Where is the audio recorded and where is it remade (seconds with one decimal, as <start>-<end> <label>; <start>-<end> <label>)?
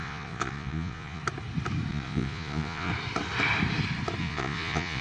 0.0-1.2 remade; 1.2-1.9 recorded; 1.9-2.9 remade; 2.9-4.2 recorded; 4.2-5.0 remade